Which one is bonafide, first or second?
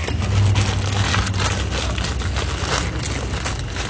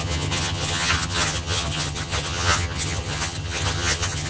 first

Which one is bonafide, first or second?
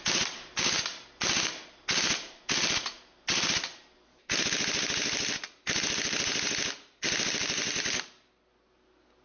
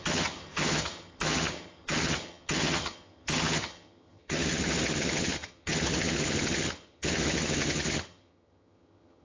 first